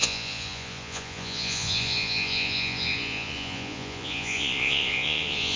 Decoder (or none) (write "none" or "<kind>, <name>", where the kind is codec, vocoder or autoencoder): vocoder, Vocos